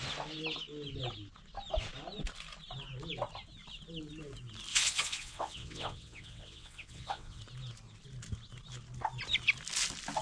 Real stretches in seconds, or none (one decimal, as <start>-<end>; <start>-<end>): 0.0-4.7; 7.4-10.2